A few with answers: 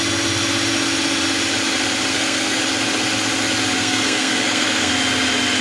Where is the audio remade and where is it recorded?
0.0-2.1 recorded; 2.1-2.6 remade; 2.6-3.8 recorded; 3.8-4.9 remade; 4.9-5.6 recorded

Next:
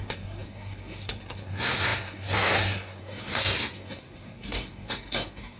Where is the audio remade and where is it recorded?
0.0-5.6 remade

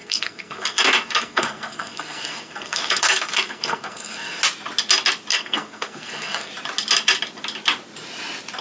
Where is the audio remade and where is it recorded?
0.0-4.4 remade; 4.4-5.3 recorded; 5.3-6.5 remade; 6.5-8.6 recorded